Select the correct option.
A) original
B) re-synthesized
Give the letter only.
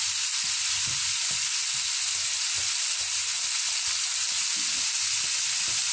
A